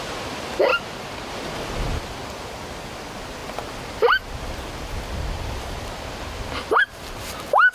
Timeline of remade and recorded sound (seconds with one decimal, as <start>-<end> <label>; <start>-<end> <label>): 0.0-0.7 recorded; 0.7-1.3 remade; 1.3-7.7 recorded